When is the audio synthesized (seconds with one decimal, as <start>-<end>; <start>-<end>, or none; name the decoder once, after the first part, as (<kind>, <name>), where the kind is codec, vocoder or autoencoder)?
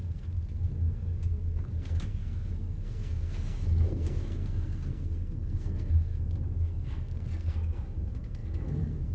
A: 0.0-9.1 (codec, SNAC)